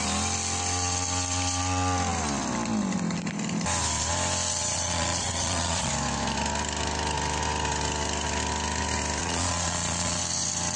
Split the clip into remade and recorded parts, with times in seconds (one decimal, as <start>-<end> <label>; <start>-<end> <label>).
0.0-4.6 recorded; 4.6-5.9 remade; 5.9-9.2 recorded; 9.2-10.2 remade; 10.2-10.8 recorded